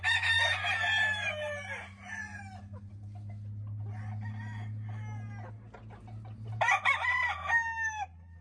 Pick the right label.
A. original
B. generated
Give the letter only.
A